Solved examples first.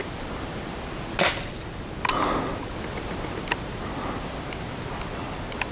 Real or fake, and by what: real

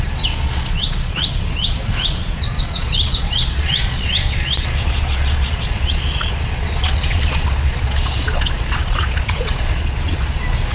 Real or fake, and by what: fake, vocoder, Vocos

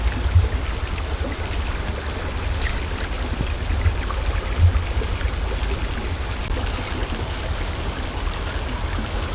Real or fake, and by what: real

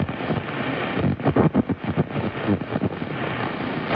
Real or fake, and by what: real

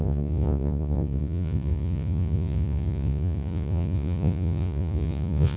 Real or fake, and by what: fake, vocoder, Vocos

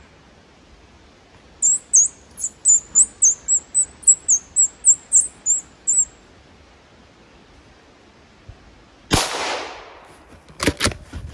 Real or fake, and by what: real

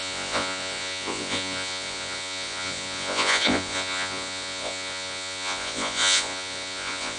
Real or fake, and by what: fake, vocoder, Vocos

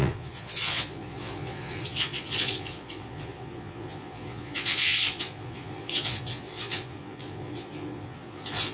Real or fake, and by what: fake, vocoder, Vocos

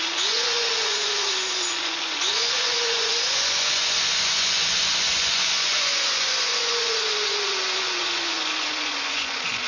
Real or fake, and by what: fake, vocoder, Vocos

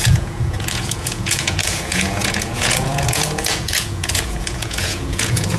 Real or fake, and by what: fake, vocoder, Vocos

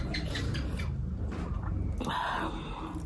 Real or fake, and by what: real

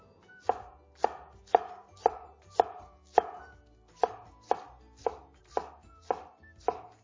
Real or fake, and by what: real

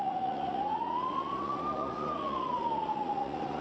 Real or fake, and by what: fake, vocoder, Vocos